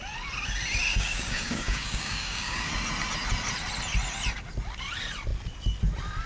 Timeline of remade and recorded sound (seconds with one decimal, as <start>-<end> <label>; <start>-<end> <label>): 0.0-0.9 recorded; 0.9-2.7 remade; 2.7-6.3 recorded

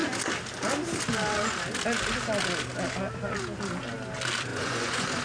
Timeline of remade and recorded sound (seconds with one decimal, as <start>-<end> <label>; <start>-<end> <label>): 0.0-4.5 recorded; 4.5-5.2 remade

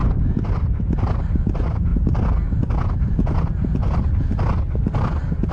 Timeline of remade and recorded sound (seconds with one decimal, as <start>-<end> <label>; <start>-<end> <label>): 0.0-5.5 recorded

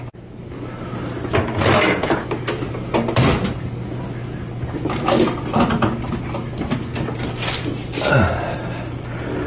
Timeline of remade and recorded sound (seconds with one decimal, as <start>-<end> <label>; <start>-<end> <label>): 0.0-9.5 recorded

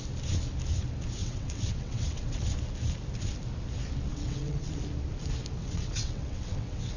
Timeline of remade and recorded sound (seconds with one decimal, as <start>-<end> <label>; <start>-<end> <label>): 0.0-1.2 recorded; 1.2-2.4 remade; 2.4-4.1 recorded; 4.1-4.7 remade; 4.7-5.6 recorded; 5.6-7.0 remade

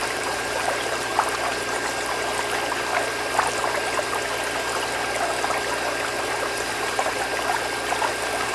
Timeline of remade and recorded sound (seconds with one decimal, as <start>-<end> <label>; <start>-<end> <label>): 0.0-1.1 remade; 1.1-6.2 recorded; 6.2-7.3 remade; 7.3-8.1 recorded; 8.1-8.5 remade